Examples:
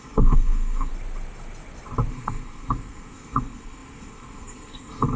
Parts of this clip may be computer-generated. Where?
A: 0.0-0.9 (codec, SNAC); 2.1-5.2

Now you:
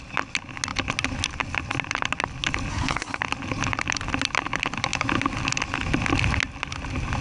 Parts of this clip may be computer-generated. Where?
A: 2.7-3.2 (codec, SNAC)